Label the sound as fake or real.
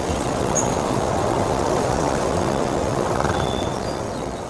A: fake